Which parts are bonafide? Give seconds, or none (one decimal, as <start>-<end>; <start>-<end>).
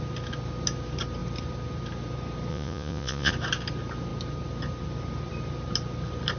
0.0-2.5; 3.3-6.4